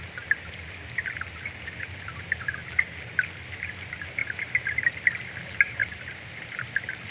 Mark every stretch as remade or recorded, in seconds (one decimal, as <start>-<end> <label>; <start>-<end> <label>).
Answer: 0.0-5.8 recorded; 5.8-6.3 remade; 6.3-7.1 recorded